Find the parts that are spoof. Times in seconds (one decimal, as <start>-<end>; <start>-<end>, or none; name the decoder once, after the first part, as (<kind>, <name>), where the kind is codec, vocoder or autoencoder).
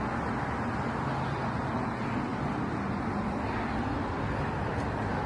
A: none